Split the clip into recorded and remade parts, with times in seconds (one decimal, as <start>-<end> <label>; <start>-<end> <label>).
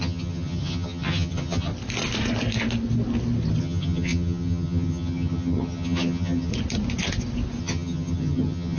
0.0-1.7 remade; 1.7-3.6 recorded; 3.6-6.5 remade; 6.5-7.6 recorded; 7.6-8.8 remade